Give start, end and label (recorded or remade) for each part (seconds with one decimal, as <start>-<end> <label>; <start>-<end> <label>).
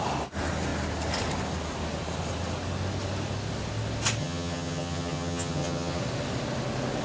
0.0-4.2 recorded; 4.2-6.0 remade; 6.0-7.0 recorded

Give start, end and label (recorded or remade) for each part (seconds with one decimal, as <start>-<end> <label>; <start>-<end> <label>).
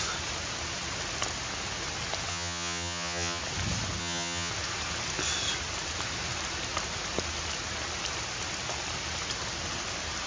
0.0-2.3 recorded; 2.3-3.4 remade; 3.4-4.0 recorded; 4.0-4.5 remade; 4.5-10.3 recorded